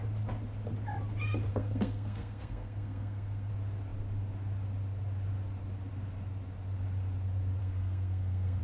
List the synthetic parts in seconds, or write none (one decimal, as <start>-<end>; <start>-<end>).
1.5-3.5; 7.6-8.6

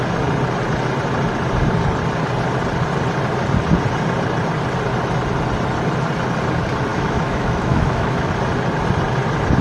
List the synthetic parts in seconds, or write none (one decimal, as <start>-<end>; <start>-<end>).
6.9-8.3

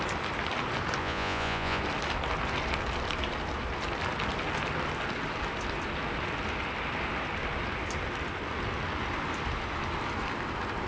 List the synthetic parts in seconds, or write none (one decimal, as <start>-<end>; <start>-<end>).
1.0-1.8